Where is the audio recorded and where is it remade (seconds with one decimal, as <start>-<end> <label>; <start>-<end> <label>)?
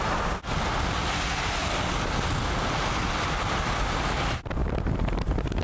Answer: 0.0-4.6 recorded; 4.6-5.6 remade